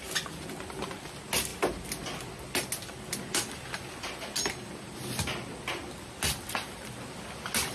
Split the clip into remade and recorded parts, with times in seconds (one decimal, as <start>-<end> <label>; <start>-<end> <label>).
0.0-7.7 recorded

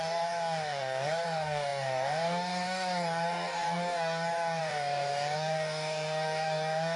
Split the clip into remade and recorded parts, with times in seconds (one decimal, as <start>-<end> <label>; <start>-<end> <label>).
0.0-7.0 remade